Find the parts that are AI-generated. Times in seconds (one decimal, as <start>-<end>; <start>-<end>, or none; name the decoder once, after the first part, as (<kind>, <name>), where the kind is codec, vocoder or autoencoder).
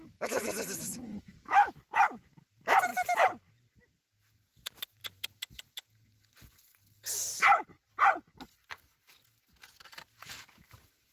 0.0-1.8 (autoencoder, DAC-VAE)